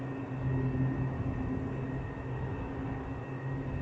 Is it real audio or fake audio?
real